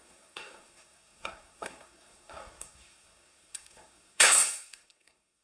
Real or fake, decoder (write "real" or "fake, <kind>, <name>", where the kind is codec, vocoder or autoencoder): fake, codec, SNAC